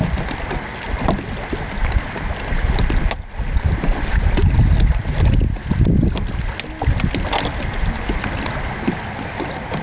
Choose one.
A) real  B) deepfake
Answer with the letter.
A